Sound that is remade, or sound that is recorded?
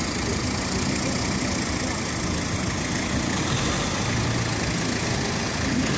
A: recorded